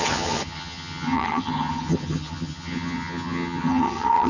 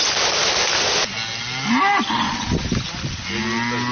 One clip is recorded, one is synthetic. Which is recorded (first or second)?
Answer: second